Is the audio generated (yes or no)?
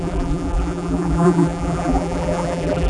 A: yes